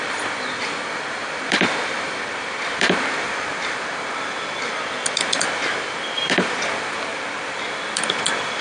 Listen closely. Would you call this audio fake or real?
fake